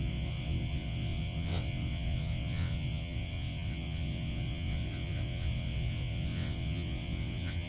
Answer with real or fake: fake